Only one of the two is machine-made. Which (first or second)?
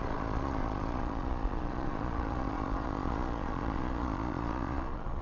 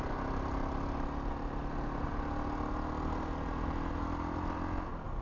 first